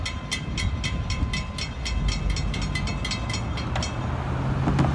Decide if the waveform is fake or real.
real